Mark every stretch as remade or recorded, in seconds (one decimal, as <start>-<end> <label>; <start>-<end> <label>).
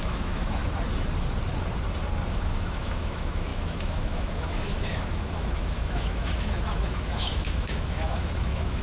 0.0-0.6 remade; 0.6-2.3 recorded; 2.3-8.8 remade